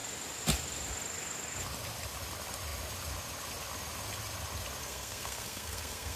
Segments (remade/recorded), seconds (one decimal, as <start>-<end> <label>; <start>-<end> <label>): 0.0-4.8 recorded; 4.8-6.2 remade